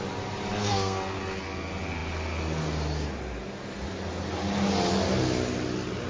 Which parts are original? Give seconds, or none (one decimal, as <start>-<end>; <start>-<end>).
0.0-0.7; 1.2-6.1